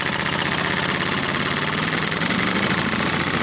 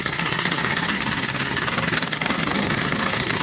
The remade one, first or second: second